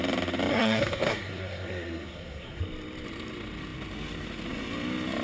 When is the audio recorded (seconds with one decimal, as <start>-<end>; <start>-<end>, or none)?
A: 0.0-0.5; 2.6-5.2